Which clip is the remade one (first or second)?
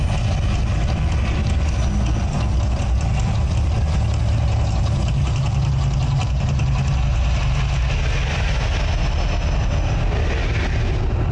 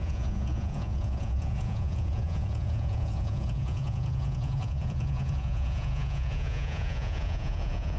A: second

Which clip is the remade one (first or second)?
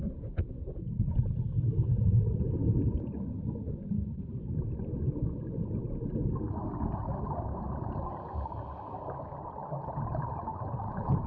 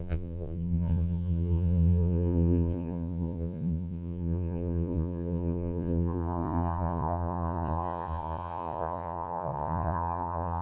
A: second